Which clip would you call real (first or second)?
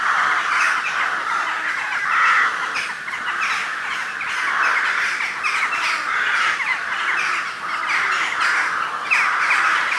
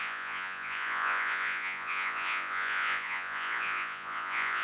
first